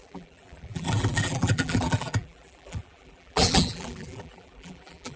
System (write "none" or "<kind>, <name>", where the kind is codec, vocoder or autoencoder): vocoder, BigVGAN v2